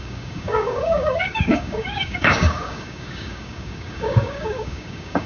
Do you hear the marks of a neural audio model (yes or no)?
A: yes